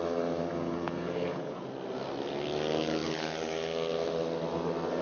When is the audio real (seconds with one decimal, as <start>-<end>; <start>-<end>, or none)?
0.0-0.5; 1.7-5.0